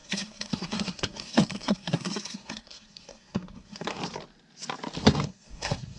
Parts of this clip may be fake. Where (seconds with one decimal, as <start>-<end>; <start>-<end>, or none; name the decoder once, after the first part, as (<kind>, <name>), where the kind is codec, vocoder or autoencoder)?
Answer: 0.0-4.0 (codec, SNAC); 5.0-6.0